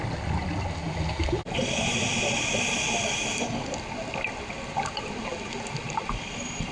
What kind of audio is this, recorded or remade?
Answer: recorded